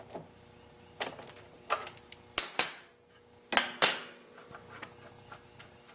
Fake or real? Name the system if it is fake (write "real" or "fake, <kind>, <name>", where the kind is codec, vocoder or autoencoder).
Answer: real